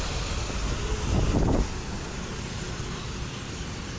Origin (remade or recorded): recorded